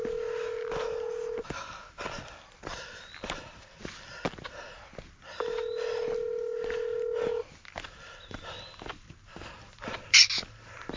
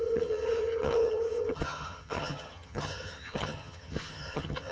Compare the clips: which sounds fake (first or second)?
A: second